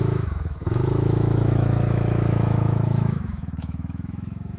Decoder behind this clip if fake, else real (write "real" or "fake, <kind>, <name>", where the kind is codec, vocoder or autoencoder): fake, autoencoder, DAC-VAE